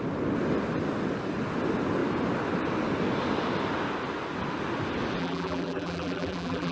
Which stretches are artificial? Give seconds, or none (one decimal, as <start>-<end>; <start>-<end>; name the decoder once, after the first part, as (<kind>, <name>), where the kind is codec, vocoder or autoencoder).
5.2-6.7 (vocoder, BigVGAN v2)